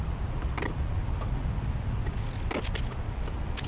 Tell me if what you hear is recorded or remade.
recorded